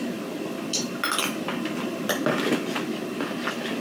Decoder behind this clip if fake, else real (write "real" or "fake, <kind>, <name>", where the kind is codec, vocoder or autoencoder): real